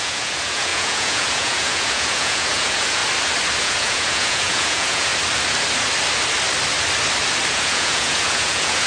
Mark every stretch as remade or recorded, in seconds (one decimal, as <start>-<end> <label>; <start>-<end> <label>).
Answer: 0.0-3.0 remade; 3.0-3.6 recorded; 3.6-5.1 remade; 5.1-7.5 recorded; 7.5-8.9 remade